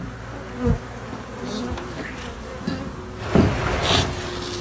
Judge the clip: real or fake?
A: real